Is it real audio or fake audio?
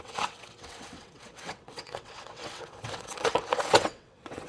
fake